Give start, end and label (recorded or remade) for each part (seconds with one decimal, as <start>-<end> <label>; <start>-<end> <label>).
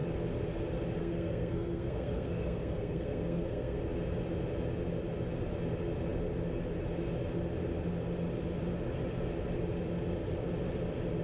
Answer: 0.0-1.0 recorded; 1.0-3.8 remade; 3.8-11.2 recorded